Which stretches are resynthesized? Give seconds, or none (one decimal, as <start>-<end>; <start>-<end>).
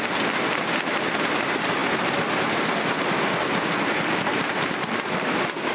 none